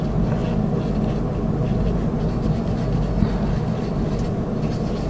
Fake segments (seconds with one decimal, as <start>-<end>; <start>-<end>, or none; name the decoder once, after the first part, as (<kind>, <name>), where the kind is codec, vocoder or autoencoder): none